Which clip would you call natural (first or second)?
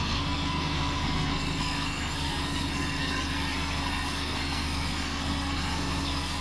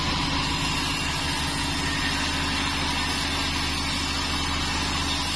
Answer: second